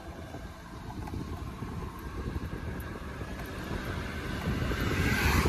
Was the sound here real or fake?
fake